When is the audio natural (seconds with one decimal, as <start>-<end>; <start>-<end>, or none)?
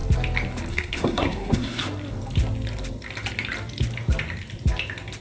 0.0-0.7; 1.8-5.2